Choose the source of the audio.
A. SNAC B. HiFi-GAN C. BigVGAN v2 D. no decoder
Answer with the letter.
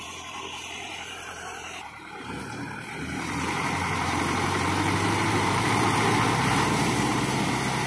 C